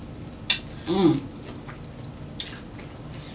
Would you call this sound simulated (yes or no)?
no